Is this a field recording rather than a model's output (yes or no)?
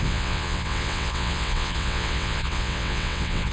no